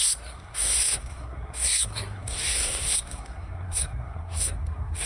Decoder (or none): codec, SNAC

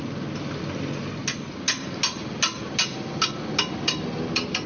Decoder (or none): none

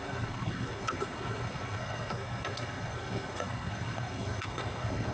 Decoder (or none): codec, SNAC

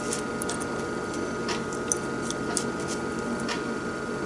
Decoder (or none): none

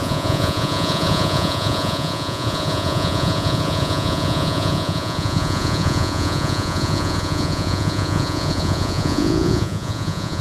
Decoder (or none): vocoder, Vocos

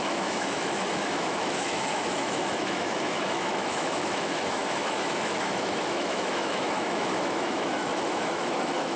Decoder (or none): autoencoder, DAC-VAE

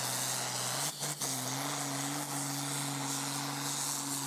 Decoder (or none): none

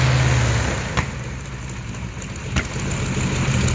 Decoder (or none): none